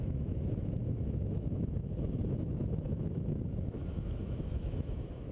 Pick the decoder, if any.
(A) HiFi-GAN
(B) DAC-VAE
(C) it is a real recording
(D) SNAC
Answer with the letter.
B